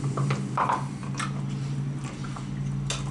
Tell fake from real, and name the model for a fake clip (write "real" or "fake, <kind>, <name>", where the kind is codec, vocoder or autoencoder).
real